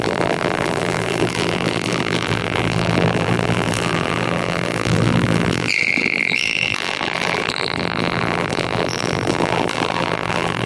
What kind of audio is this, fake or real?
fake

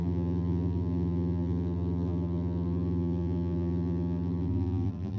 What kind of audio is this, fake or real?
fake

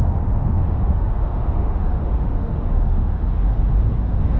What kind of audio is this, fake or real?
fake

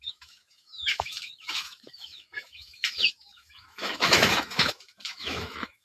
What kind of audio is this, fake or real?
fake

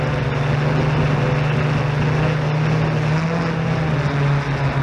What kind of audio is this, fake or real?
real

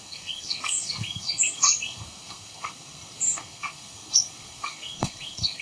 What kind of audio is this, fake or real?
fake